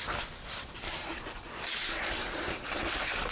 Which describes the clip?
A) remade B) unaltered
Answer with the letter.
A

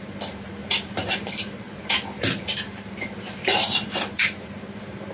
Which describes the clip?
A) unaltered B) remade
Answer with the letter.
B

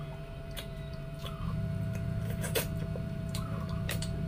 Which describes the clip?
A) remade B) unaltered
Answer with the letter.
A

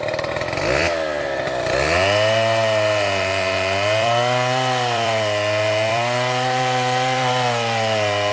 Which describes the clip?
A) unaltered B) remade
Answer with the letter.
B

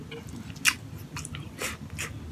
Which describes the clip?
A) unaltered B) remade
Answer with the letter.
A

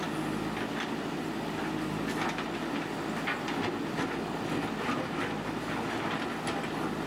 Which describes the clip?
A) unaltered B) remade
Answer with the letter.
A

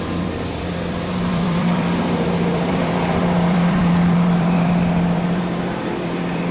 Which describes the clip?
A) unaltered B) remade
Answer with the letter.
B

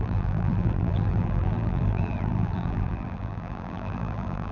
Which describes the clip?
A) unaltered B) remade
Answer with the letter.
B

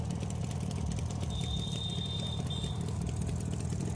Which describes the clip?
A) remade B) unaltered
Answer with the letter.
B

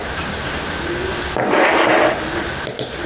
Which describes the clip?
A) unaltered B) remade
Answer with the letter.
A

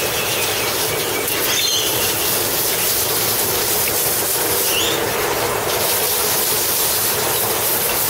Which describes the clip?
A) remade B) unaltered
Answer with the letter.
B